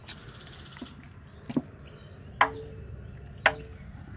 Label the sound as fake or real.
real